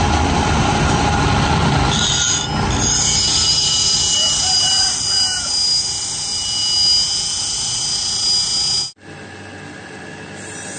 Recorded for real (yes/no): yes